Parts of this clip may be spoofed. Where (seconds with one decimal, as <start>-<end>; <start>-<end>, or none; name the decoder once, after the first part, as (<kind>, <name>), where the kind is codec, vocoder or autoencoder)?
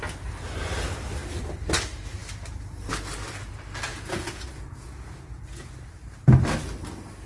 3.9-5.7 (vocoder, Vocos)